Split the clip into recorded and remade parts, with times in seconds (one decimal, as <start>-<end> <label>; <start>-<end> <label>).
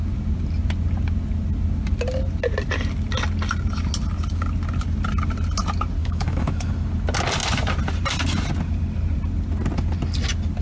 0.0-6.0 recorded; 6.0-6.7 remade; 6.7-10.6 recorded